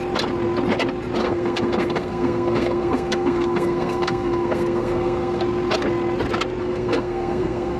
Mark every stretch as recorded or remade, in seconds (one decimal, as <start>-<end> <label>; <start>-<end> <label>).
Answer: 0.0-1.2 recorded; 1.2-5.4 remade; 5.4-6.6 recorded; 6.6-7.8 remade